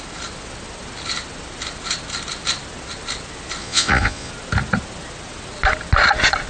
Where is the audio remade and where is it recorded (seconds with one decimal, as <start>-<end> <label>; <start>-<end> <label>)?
0.0-3.6 recorded; 3.6-4.3 remade; 4.3-6.5 recorded